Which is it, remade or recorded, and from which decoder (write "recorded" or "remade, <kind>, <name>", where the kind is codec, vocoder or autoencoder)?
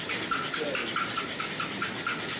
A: recorded